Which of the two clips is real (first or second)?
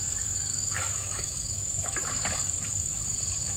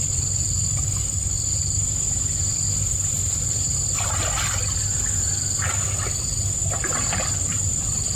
second